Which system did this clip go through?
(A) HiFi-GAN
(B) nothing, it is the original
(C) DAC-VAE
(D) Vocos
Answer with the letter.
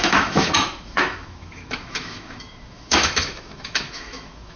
C